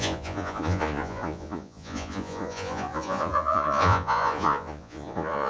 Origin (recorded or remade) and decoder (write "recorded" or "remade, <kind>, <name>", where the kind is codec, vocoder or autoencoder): remade, vocoder, Vocos